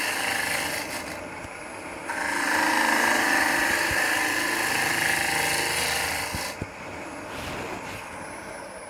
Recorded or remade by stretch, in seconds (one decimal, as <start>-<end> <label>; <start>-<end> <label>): 0.0-8.9 recorded